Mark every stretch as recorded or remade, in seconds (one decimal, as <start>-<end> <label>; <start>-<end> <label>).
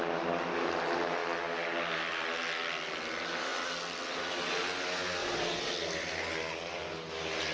0.0-5.2 recorded; 5.2-5.7 remade; 5.7-7.5 recorded